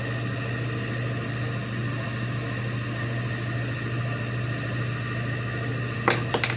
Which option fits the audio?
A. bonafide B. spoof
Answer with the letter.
A